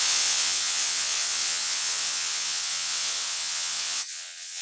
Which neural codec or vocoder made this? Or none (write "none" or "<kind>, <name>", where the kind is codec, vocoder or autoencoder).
vocoder, WaveNeXt